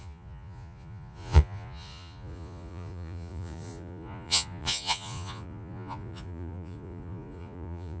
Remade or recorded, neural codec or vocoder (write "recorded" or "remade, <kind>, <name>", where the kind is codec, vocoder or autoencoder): remade, vocoder, Vocos